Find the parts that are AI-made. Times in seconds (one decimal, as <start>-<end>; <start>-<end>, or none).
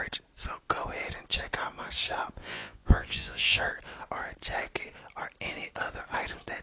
2.4-3.6